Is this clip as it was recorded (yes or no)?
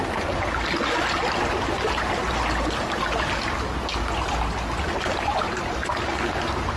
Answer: yes